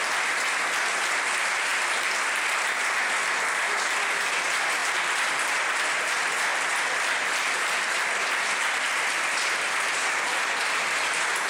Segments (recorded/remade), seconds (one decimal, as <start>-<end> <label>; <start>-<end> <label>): 0.0-6.5 recorded; 6.5-10.3 remade; 10.3-11.5 recorded